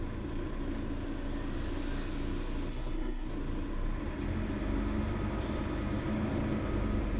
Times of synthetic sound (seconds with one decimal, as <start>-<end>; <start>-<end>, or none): 2.7-3.3